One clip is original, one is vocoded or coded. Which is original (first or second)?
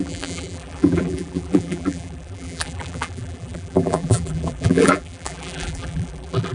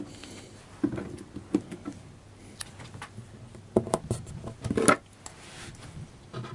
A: second